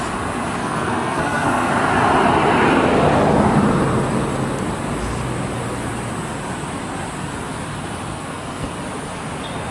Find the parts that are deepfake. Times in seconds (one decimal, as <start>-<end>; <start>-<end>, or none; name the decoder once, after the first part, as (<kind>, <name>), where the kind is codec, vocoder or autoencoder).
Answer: 0.6-1.7 (codec, SNAC); 8.1-8.7